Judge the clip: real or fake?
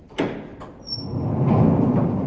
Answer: real